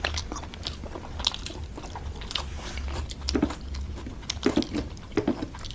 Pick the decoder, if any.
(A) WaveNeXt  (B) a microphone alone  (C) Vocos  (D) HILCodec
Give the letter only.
B